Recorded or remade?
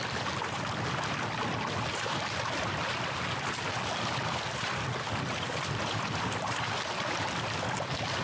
recorded